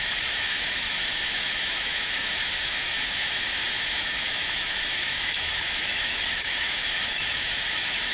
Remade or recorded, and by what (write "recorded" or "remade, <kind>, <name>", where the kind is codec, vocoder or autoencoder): remade, autoencoder, DAC-VAE